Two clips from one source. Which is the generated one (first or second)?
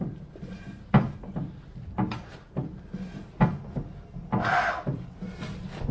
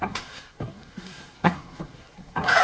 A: second